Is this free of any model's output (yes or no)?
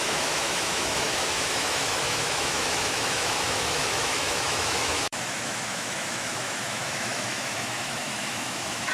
no